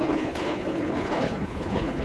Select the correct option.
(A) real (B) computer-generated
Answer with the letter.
B